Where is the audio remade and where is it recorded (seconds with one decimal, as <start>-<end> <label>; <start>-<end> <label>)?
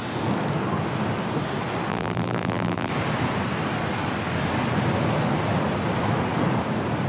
0.0-1.9 recorded; 1.9-2.9 remade; 2.9-7.1 recorded